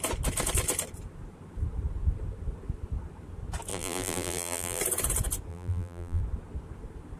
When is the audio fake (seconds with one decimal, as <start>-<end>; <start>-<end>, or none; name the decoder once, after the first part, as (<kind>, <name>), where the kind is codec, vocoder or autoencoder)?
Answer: 3.7-4.8 (vocoder, BigVGAN v2); 5.5-6.2